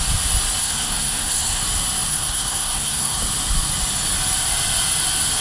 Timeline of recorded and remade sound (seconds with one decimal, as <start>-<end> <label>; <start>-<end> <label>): 0.0-0.6 recorded; 0.6-1.6 remade; 1.6-2.1 recorded; 2.1-3.2 remade; 3.2-5.4 recorded